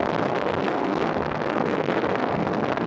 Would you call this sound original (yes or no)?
no